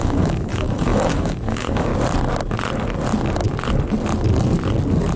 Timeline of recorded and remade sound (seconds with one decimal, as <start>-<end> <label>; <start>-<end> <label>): 0.0-1.9 remade; 1.9-5.2 recorded